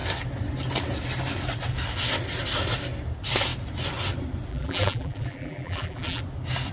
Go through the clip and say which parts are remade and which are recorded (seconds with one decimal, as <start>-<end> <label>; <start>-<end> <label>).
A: 0.0-4.5 recorded; 4.5-6.2 remade; 6.2-6.7 recorded